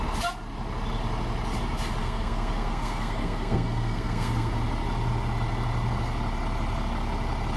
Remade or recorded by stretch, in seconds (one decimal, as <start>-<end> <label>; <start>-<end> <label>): 0.0-2.0 recorded; 2.0-4.5 remade; 4.5-7.6 recorded